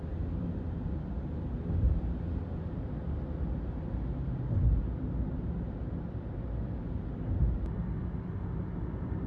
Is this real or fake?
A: real